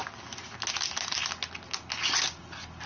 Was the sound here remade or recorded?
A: recorded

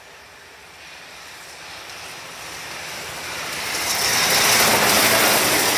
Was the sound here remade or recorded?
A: recorded